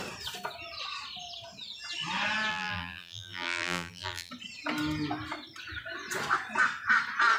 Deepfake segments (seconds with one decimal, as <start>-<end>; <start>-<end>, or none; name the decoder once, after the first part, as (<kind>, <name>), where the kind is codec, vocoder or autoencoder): 2.5-4.3 (vocoder, BigVGAN v2)